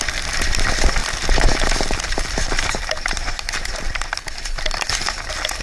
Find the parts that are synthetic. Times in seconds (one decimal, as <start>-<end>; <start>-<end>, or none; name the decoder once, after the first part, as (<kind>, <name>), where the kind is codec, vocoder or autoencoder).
1.0-3.8 (vocoder, BigVGAN v2)